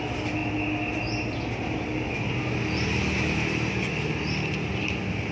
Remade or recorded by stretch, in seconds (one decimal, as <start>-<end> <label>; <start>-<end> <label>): 0.0-5.3 recorded